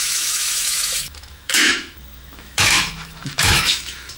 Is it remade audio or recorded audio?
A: remade